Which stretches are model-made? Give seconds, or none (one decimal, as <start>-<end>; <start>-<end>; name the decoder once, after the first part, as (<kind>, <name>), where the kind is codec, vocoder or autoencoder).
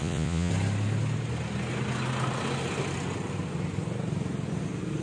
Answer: 0.0-0.5 (vocoder, Vocos)